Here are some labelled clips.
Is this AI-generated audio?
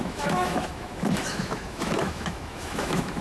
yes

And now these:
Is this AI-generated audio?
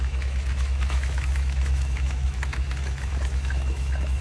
yes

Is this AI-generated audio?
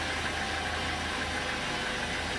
no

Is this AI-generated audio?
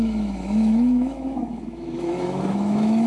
yes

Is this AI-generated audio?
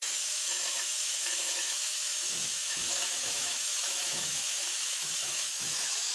yes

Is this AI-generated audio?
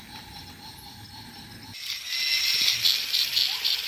no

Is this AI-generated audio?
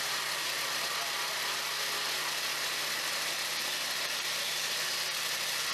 no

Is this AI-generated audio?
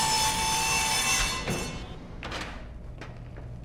no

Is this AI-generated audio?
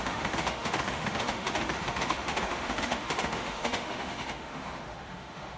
yes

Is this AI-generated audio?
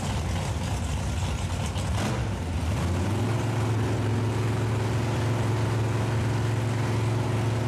no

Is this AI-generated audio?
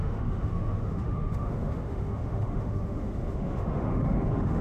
yes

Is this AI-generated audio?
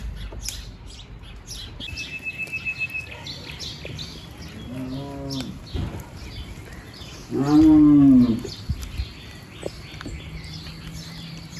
no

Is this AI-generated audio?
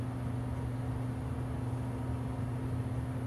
no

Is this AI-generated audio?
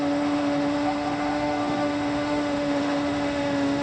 yes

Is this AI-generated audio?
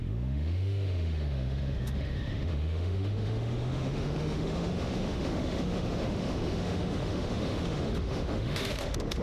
yes